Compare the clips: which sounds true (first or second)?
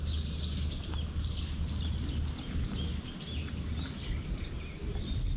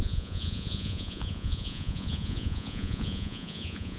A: first